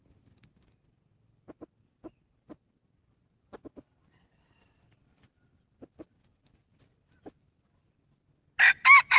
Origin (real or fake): real